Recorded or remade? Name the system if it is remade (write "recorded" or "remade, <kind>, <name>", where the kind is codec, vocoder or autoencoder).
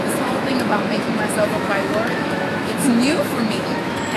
remade, autoencoder, DAC-VAE